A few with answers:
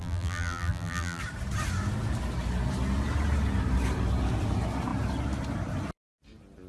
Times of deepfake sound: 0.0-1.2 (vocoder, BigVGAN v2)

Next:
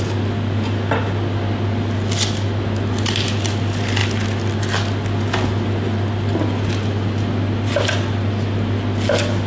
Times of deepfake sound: none

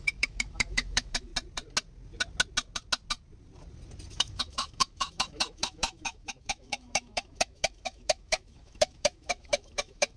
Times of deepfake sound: 0.0-1.3 (autoencoder, DAC-VAE); 4.1-10.2

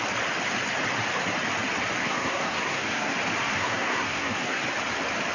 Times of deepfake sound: 2.0-3.1 (codec, SNAC); 3.5-4.6

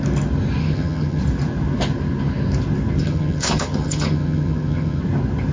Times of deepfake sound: 0.6-1.2 (vocoder, HiFi-GAN); 3.0-5.0

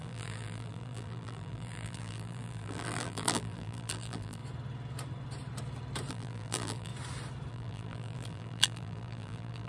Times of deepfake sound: 0.0-4.4 (vocoder, BigVGAN v2); 6.1-6.9; 7.5-9.7